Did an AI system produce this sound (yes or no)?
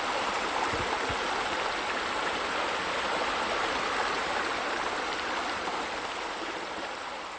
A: no